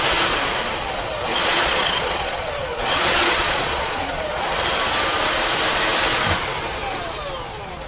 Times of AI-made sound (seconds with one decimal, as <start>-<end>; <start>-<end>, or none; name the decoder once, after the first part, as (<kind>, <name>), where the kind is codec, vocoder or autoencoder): 1.3-4.4 (vocoder, Vocos)